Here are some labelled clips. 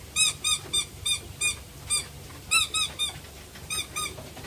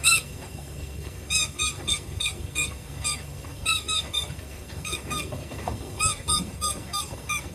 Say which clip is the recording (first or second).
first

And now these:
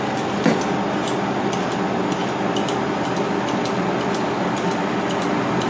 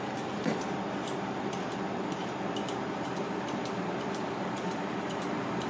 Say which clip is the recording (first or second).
first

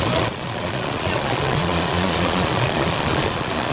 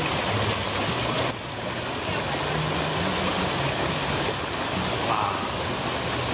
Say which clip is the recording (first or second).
second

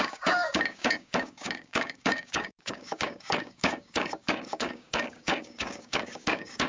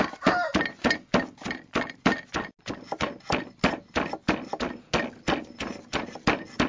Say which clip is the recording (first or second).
second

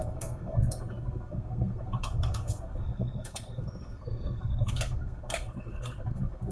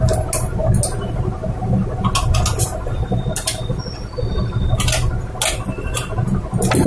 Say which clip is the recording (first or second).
second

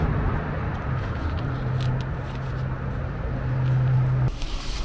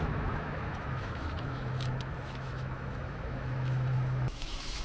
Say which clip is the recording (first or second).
first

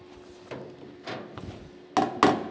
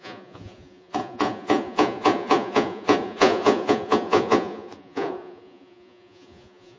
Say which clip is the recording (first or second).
first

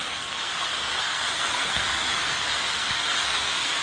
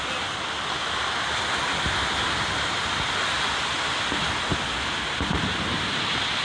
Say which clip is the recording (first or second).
second